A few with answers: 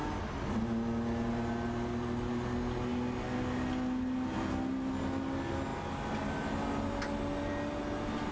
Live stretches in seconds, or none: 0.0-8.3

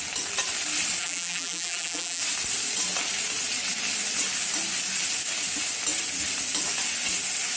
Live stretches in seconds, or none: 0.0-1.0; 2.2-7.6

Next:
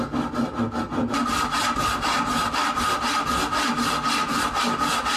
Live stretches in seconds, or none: 0.0-5.2

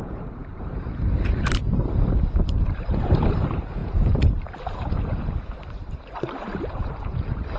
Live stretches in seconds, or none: none

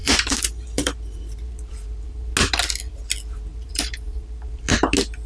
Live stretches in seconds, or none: 2.3-3.5; 4.7-5.3

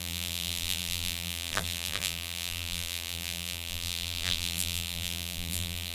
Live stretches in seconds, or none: none